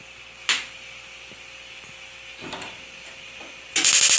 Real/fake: real